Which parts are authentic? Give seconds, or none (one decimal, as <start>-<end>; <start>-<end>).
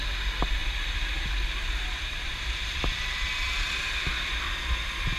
0.0-0.6; 3.7-5.2